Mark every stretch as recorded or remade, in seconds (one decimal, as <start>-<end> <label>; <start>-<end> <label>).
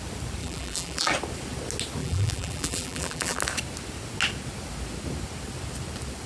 0.0-0.4 recorded; 0.4-1.1 remade; 1.1-2.0 recorded; 2.0-3.4 remade; 3.4-6.3 recorded